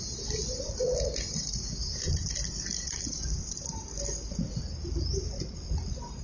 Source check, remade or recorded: recorded